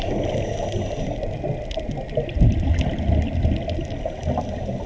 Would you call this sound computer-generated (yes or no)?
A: no